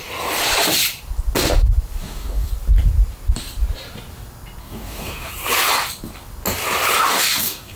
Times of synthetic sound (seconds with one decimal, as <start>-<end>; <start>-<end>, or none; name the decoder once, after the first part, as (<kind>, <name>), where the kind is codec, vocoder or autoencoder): 2.0-2.5 (codec, DAC); 4.6-5.3; 7.1-7.8

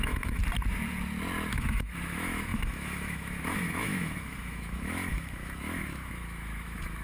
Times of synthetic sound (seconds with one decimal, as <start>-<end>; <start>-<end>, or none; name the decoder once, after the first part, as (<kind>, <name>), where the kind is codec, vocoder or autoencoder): 0.0-0.4 (autoencoder, DAC-VAE); 1.5-7.0

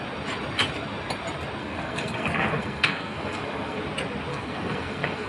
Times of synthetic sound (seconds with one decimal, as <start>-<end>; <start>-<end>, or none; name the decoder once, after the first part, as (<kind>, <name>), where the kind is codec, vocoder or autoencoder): 1.6-3.8 (codec, SNAC); 4.3-5.3

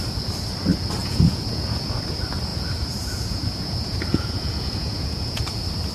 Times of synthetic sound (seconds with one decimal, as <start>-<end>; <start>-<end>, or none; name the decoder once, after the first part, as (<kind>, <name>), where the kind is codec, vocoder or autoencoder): 1.0-2.0 (vocoder, Vocos); 2.5-5.4

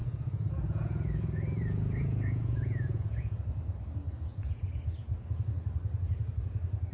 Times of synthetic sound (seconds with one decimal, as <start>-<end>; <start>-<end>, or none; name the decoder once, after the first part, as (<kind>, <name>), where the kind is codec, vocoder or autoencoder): 0.0-3.4 (vocoder, Vocos); 4.3-4.8

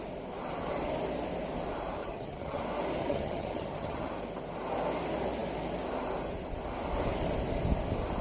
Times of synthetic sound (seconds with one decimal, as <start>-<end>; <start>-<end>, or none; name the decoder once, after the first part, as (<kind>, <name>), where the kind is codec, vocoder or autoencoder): 2.0-2.6 (vocoder, HiFi-GAN); 3.0-4.1